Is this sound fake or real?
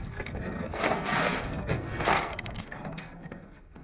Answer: fake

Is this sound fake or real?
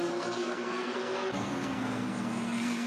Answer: fake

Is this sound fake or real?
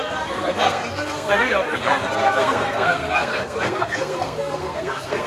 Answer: fake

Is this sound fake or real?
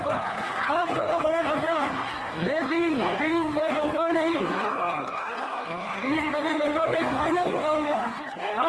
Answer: fake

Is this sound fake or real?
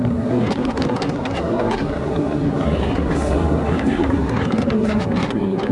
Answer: fake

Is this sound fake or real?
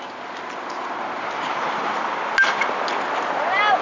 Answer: real